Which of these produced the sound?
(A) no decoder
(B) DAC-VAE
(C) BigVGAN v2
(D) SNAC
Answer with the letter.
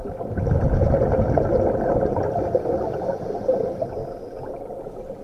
A